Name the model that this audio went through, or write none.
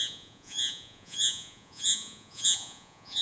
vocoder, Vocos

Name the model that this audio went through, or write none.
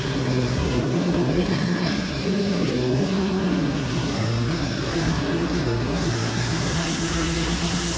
codec, SNAC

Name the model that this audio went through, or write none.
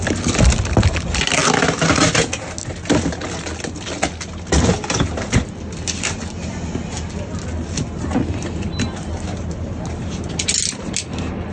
none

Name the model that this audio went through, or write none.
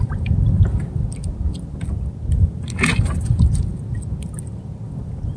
none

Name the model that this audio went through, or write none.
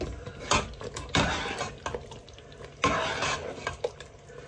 none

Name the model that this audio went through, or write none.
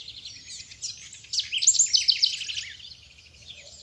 none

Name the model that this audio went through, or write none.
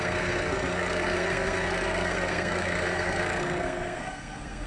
codec, SNAC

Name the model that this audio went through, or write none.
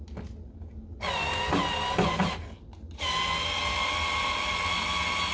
none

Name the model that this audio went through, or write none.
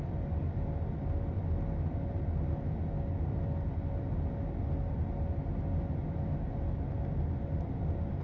none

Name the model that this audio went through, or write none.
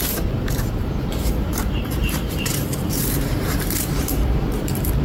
vocoder, BigVGAN v2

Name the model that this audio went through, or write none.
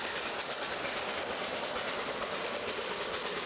none